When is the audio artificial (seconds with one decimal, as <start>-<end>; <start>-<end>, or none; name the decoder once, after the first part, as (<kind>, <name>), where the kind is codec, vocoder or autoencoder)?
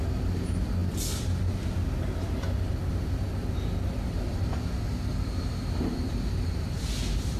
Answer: none